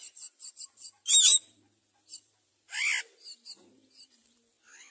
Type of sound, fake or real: real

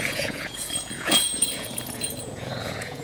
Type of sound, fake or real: fake